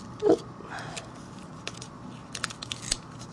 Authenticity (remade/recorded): recorded